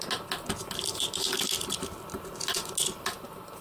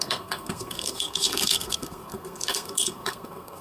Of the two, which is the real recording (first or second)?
first